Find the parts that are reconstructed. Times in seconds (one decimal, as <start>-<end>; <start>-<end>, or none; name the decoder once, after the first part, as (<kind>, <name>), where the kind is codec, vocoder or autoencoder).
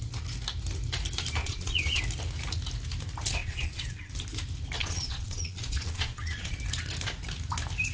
1.4-2.0 (vocoder, Vocos); 3.4-4.1; 4.8-6.6